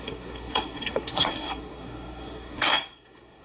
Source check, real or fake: fake